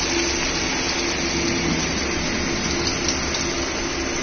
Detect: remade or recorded recorded